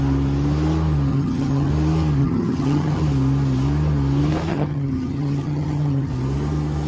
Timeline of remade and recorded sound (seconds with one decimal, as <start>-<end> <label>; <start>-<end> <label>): 0.0-1.1 recorded; 1.1-1.7 remade; 1.7-2.2 recorded; 2.2-3.0 remade; 3.0-4.5 recorded; 4.5-6.1 remade; 6.1-6.9 recorded